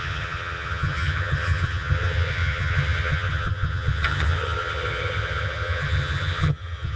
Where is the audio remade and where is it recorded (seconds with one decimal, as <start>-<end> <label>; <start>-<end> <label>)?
0.0-7.0 remade